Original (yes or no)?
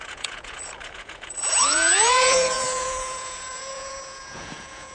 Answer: no